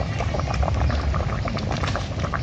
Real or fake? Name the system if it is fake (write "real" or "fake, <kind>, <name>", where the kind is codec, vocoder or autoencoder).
fake, vocoder, BigVGAN v2